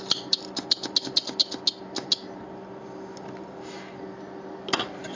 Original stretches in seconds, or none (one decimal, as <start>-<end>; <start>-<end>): 0.0-5.2